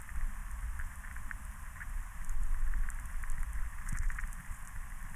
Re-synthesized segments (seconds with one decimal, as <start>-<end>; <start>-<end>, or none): 3.7-4.7